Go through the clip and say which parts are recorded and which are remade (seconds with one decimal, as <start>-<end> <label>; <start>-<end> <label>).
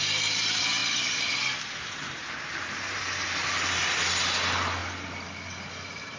0.0-6.2 recorded